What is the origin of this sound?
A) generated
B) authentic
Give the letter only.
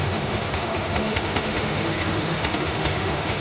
A